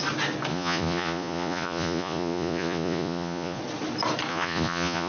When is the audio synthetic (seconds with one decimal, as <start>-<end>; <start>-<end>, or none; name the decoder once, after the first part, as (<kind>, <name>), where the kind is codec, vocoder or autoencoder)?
0.5-3.6 (vocoder, Vocos); 4.3-5.1